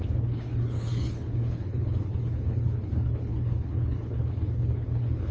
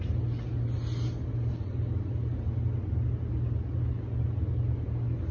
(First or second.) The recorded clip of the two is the second